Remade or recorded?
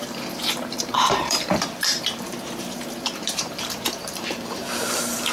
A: remade